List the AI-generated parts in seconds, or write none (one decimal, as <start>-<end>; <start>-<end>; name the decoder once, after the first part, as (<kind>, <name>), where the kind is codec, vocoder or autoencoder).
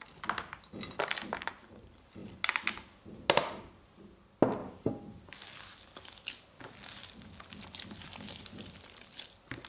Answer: none